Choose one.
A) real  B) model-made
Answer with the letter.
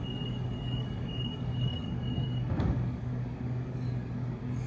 B